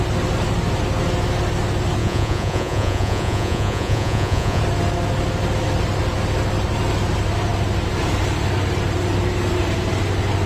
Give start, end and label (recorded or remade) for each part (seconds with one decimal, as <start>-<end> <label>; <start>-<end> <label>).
0.0-2.0 recorded; 2.0-4.6 remade; 4.6-10.5 recorded